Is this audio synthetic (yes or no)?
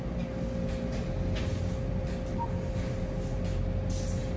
no